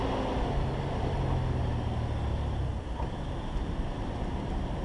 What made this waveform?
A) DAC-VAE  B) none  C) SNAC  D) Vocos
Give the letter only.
B